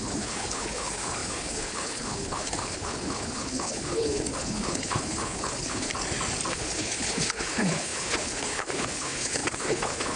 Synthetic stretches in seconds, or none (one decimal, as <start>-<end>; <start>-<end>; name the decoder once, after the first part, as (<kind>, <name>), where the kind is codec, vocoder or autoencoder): 0.0-5.9 (codec, HILCodec); 6.5-10.2

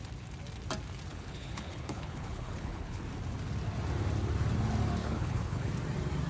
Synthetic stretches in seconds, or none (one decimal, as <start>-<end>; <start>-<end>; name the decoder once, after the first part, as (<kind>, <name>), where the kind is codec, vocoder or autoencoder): 1.1-3.0 (codec, HILCodec); 5.0-5.7

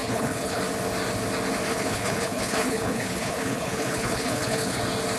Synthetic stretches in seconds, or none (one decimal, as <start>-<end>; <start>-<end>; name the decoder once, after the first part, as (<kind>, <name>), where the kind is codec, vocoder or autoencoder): 0.0-0.6 (codec, HILCodec); 1.7-4.8

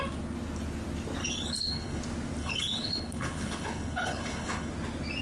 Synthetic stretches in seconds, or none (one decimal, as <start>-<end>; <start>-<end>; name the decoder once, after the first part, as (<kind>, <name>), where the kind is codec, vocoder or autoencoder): 1.2-2.0 (codec, HILCodec); 2.4-4.7

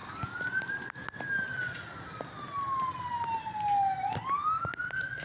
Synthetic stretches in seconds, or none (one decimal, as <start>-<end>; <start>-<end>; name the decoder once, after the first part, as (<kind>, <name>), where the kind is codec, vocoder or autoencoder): none

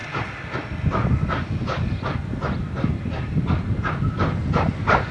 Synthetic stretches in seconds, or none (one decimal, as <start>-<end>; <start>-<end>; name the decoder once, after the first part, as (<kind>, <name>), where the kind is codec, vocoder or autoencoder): none